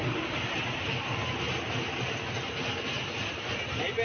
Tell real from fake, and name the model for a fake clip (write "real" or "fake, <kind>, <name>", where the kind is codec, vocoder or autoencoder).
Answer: real